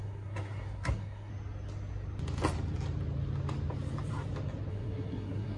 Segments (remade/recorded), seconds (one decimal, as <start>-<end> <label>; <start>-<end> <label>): 0.0-1.3 remade; 1.3-4.7 recorded; 4.7-5.6 remade